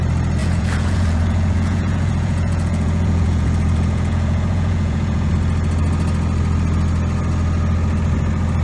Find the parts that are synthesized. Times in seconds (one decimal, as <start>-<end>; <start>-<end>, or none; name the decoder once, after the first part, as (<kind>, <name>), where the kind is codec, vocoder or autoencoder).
0.4-5.3 (vocoder, Vocos)